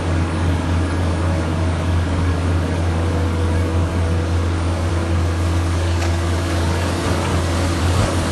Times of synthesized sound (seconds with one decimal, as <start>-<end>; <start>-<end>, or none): 0.0-7.3; 7.8-8.3